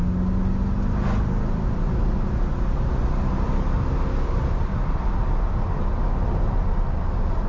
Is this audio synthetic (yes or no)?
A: no